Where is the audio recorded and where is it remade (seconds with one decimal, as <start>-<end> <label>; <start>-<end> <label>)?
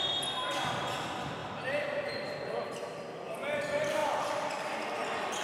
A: 0.0-1.4 recorded; 1.4-3.0 remade; 3.0-5.4 recorded